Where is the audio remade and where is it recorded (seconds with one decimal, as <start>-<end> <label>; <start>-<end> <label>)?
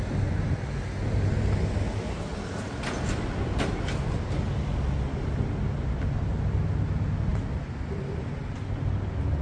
0.0-9.4 recorded